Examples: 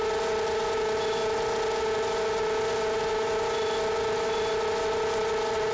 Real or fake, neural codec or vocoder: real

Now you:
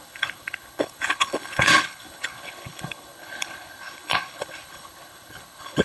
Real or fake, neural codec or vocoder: fake, codec, HILCodec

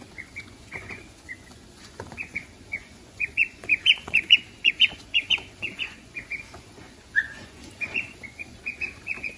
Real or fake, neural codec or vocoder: fake, vocoder, Vocos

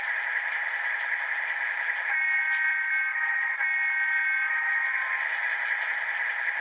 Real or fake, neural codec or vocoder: real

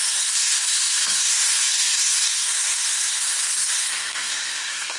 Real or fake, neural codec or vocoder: fake, codec, SNAC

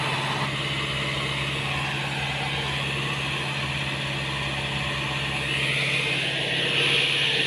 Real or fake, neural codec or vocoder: real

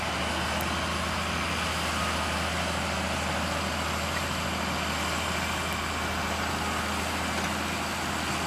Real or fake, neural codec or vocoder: real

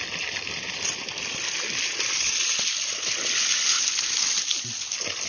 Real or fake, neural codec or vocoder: real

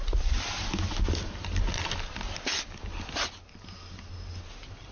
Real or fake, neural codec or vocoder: real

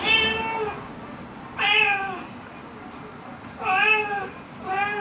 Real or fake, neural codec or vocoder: real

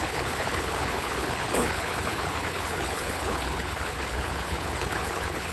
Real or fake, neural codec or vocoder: fake, codec, HILCodec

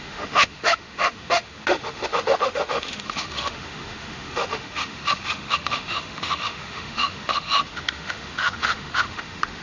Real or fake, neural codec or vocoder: fake, autoencoder, DAC-VAE